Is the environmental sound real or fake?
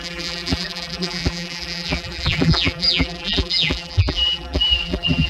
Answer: fake